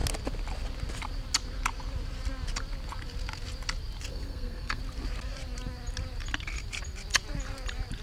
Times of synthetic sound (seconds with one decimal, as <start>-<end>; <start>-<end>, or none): 4.1-4.8